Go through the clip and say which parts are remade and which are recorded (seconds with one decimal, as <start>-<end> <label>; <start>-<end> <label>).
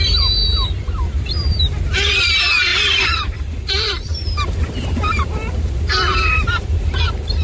0.0-7.4 remade